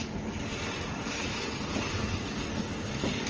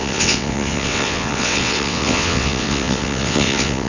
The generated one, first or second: second